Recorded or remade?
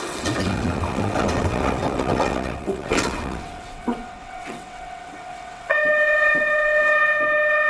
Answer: remade